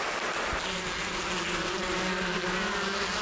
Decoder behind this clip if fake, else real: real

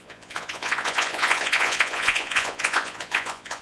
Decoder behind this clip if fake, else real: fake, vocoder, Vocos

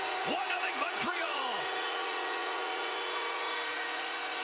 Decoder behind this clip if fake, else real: fake, vocoder, Vocos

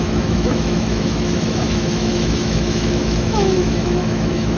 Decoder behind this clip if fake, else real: fake, autoencoder, DAC-VAE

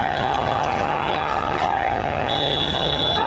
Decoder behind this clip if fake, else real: fake, vocoder, HiFi-GAN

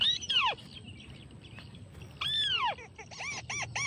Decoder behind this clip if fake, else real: real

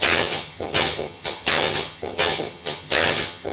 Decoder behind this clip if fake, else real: fake, vocoder, HiFi-GAN